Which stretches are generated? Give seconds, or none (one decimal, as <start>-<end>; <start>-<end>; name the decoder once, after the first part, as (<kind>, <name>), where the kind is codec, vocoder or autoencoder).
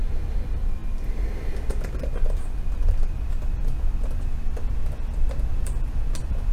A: none